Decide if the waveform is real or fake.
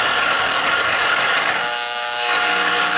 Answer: fake